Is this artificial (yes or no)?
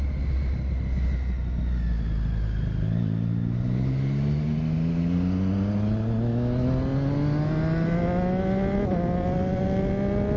no